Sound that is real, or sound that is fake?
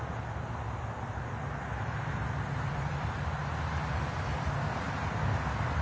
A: real